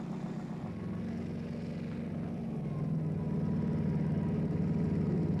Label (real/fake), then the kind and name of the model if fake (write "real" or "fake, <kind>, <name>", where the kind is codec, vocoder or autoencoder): real